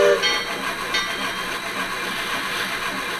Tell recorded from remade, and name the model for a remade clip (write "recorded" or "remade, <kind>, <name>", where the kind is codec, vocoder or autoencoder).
recorded